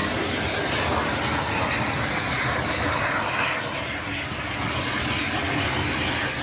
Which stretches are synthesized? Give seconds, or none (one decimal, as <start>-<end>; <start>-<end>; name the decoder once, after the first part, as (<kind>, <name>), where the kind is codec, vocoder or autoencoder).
none